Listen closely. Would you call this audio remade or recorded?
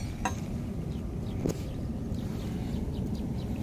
recorded